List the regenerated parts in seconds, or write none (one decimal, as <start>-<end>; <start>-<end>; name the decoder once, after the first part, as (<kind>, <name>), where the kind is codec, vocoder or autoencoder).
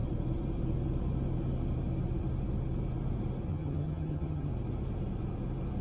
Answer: 3.5-4.5 (vocoder, HiFi-GAN)